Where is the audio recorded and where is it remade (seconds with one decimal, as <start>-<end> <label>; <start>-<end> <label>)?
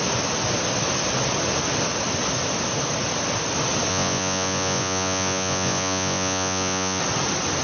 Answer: 0.0-3.9 recorded; 3.9-7.0 remade; 7.0-7.6 recorded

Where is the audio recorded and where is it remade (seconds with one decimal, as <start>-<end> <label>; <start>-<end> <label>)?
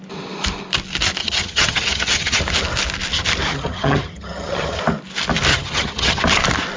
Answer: 0.0-1.2 recorded; 1.2-2.4 remade; 2.4-3.5 recorded; 3.5-4.8 remade; 4.8-5.5 recorded; 5.5-6.2 remade; 6.2-6.8 recorded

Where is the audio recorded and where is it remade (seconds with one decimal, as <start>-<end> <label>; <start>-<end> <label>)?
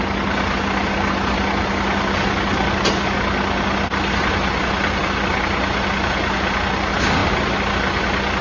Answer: 0.0-8.4 recorded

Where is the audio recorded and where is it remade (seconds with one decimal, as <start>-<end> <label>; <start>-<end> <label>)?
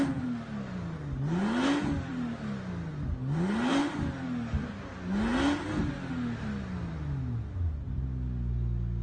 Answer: 0.0-9.0 recorded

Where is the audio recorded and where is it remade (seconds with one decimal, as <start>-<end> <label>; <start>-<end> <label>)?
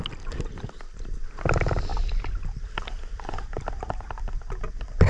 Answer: 0.0-1.9 recorded; 1.9-5.1 remade